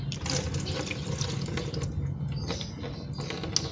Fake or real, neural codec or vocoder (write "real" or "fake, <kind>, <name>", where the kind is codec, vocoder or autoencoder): real